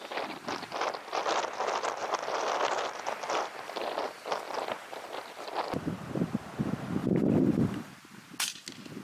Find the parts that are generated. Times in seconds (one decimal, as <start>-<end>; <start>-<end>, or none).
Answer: 2.0-5.4; 7.0-7.9